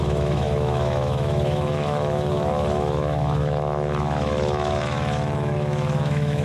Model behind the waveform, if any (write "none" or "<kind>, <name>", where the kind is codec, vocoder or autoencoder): autoencoder, DAC-VAE